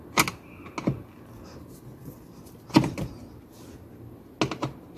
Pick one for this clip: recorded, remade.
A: recorded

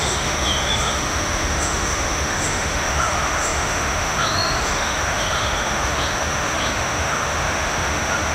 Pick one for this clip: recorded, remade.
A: remade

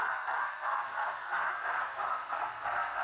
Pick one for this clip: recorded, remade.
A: remade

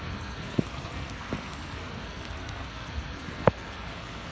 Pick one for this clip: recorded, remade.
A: remade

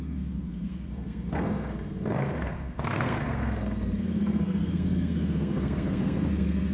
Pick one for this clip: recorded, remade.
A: remade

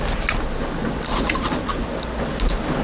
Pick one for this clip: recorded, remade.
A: recorded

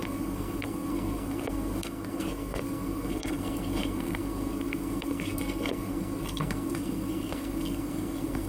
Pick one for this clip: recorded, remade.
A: remade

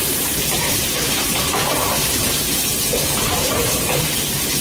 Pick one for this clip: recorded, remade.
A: remade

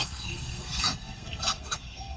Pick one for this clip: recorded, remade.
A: remade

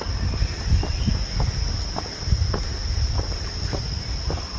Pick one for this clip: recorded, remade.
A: recorded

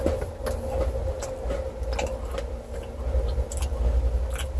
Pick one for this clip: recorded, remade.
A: recorded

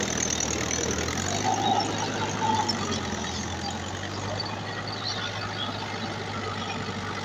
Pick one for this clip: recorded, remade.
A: recorded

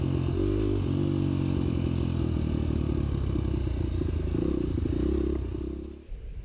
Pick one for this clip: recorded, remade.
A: recorded